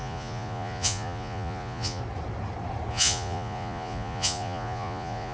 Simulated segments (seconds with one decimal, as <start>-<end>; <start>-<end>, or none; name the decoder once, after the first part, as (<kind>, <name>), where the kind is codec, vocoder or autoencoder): 0.0-2.0 (vocoder, Vocos); 2.9-5.3